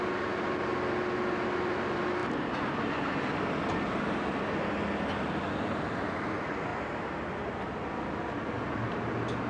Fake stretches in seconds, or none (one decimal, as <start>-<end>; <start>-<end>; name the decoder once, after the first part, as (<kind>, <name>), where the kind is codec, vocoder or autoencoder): none